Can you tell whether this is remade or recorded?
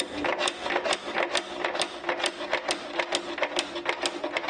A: recorded